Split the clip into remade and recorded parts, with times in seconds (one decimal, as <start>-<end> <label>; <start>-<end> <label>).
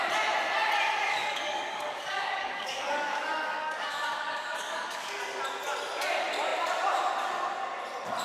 0.0-1.1 recorded; 1.1-5.2 remade; 5.2-8.2 recorded